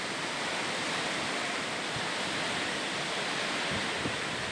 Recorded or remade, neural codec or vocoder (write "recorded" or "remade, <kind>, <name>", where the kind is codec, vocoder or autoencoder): recorded